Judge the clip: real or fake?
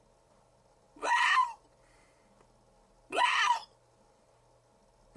real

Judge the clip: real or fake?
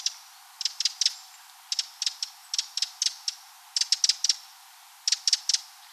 real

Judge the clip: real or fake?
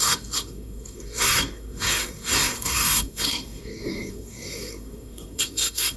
fake